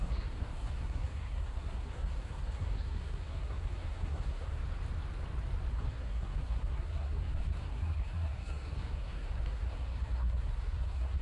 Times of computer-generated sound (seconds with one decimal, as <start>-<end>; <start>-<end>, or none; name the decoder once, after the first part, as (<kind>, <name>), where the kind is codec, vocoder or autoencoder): 0.0-4.6 (codec, SNAC); 5.7-11.2